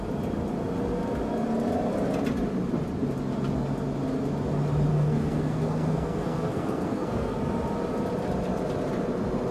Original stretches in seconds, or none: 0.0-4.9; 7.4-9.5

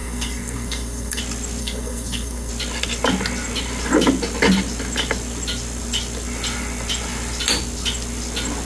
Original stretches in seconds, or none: 1.2-1.6; 2.5-8.6

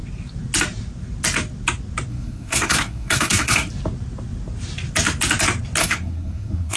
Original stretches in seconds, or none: 0.0-2.1; 3.7-5.8

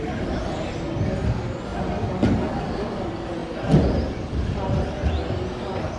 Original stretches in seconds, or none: 0.0-6.0

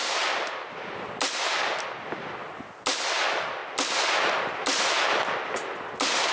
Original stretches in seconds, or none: 0.0-6.3